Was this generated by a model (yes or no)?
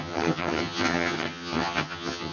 yes